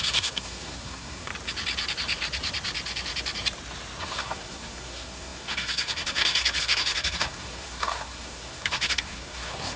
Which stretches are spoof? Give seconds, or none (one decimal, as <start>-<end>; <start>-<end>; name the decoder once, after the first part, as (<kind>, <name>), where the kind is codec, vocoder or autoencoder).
0.0-1.3 (codec, SNAC); 4.0-9.8